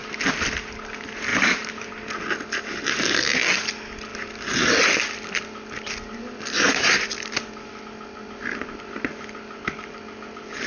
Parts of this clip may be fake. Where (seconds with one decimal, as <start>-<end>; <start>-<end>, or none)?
1.3-1.9